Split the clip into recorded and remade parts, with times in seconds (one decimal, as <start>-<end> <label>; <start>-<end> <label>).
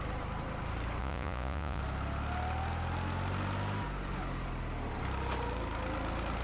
0.0-1.0 recorded; 1.0-1.8 remade; 1.8-6.4 recorded